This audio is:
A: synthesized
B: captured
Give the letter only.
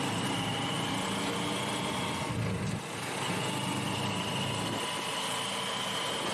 B